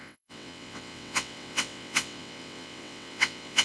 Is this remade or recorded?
remade